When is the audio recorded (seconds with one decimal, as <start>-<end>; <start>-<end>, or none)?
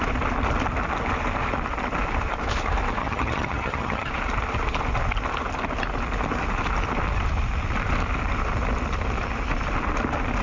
0.0-3.0; 4.1-10.4